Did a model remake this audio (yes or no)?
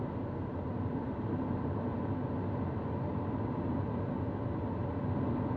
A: no